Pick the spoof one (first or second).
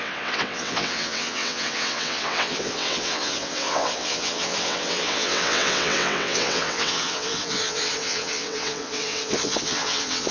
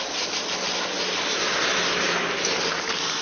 first